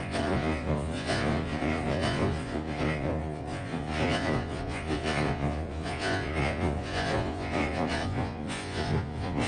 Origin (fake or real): fake